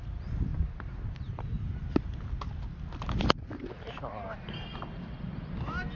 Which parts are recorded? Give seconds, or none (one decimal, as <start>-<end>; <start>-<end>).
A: 0.0-6.0